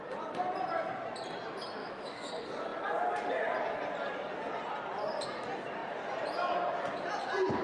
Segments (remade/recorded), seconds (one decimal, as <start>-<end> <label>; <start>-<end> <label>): 0.0-1.8 recorded; 1.8-2.3 remade; 2.3-7.6 recorded